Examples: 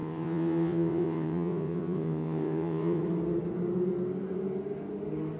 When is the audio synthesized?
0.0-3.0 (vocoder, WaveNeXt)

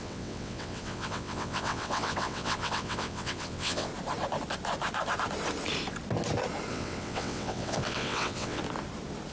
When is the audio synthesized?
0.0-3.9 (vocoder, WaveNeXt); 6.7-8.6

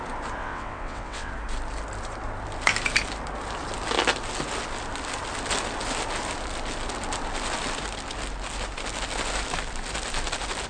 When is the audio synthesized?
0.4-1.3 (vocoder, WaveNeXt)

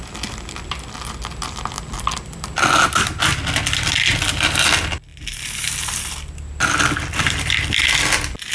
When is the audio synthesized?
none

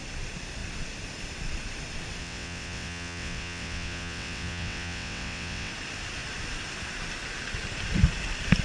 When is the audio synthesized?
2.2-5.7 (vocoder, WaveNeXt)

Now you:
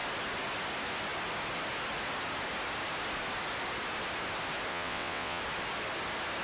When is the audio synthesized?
4.7-5.4 (vocoder, WaveNeXt)

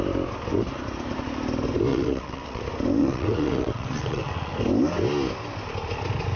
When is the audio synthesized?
1.9-2.6 (vocoder, WaveNeXt); 3.0-4.5